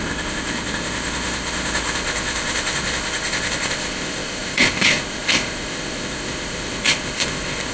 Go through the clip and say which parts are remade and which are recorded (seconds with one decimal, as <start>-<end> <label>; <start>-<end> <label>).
0.0-7.7 remade